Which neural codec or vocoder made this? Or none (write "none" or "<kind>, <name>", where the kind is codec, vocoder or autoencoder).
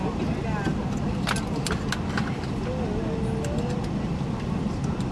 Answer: none